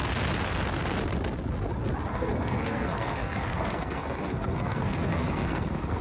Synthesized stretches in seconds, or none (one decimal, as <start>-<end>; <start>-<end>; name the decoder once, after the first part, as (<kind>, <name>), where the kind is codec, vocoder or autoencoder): 2.1-6.0 (codec, SNAC)